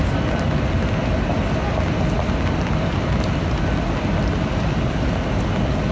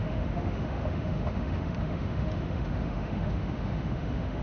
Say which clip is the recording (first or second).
first